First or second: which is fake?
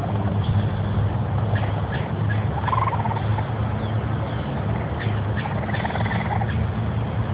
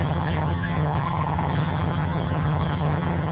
second